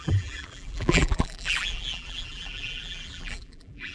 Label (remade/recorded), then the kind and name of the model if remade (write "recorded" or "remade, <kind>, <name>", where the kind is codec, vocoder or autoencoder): remade, vocoder, BigVGAN v2